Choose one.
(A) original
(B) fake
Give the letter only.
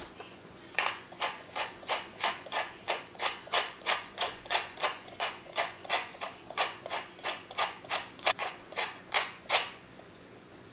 B